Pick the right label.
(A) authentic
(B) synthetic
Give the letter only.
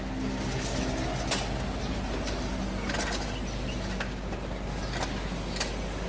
A